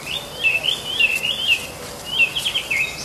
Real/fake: real